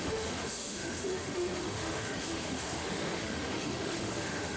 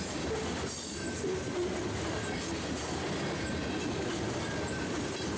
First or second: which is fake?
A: first